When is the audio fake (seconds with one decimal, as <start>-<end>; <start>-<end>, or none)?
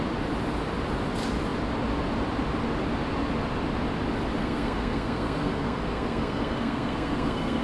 4.4-7.6